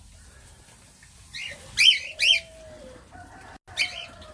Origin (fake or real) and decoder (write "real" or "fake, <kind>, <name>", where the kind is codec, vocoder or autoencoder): real